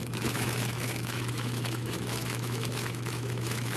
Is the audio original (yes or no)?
no